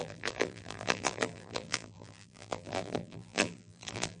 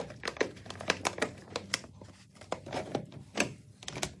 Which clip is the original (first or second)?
second